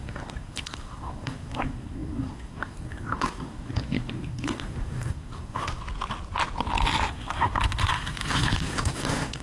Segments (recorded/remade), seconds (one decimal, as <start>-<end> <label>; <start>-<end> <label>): 0.0-5.8 remade; 5.8-7.1 recorded; 7.1-9.4 remade